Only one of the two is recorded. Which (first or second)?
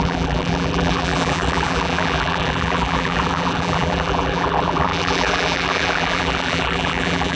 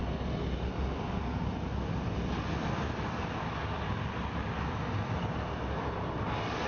second